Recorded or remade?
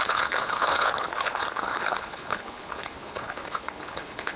remade